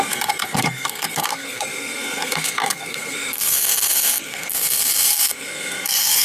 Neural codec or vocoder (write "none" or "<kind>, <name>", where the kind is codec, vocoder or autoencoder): codec, SNAC